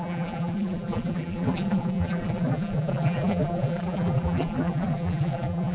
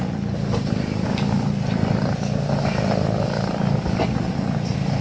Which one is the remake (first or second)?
first